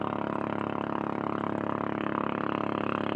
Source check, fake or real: real